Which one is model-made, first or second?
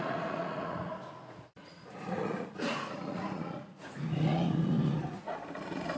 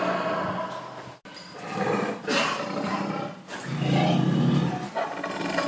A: first